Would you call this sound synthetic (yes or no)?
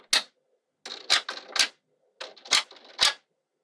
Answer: no